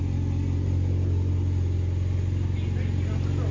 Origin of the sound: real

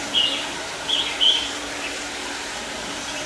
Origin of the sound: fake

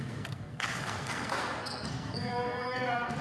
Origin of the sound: fake